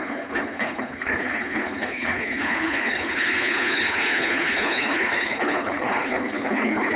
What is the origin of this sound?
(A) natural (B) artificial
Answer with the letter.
B